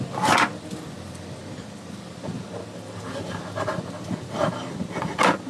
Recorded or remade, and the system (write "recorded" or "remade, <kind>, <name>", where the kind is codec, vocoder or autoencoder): recorded